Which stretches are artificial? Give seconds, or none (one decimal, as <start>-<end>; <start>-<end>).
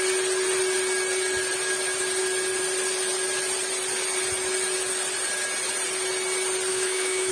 6.7-7.3